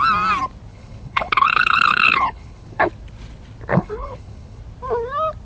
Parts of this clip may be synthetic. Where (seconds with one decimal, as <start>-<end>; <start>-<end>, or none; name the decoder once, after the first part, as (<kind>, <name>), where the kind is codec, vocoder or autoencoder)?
0.7-2.9 (codec, HILCodec); 3.7-4.6